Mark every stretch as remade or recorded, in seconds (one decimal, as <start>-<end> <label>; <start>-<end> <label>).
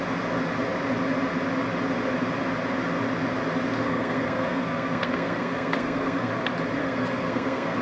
0.0-3.8 recorded; 3.8-6.3 remade; 6.3-6.8 recorded; 6.8-7.8 remade